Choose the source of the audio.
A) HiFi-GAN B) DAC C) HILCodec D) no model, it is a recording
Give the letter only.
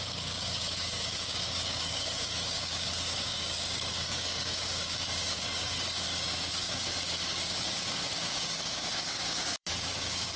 B